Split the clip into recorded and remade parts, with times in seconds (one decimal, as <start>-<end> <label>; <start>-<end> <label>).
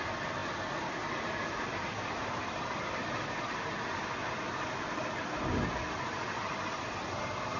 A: 0.0-1.7 recorded; 1.7-2.5 remade; 2.5-7.6 recorded